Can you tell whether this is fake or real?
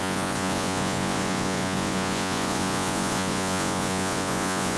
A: fake